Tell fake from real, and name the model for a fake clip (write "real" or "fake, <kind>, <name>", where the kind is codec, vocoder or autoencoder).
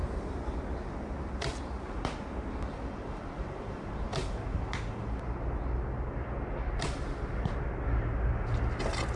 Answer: real